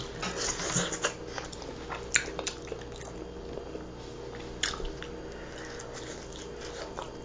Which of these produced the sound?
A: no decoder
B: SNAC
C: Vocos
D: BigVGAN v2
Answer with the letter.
A